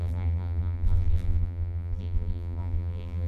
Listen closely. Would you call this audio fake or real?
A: fake